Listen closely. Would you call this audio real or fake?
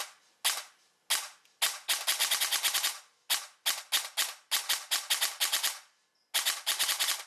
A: real